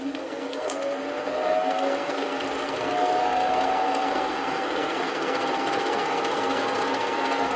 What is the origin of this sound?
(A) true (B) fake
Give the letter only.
B